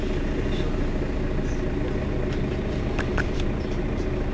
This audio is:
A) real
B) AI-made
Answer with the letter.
A